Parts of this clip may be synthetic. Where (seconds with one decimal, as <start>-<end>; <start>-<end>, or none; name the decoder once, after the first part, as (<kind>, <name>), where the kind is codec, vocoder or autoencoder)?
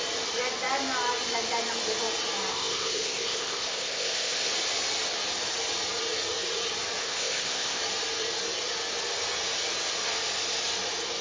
2.5-4.5 (codec, ZipCodec); 7.0-7.8